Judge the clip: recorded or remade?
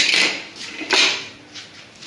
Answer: recorded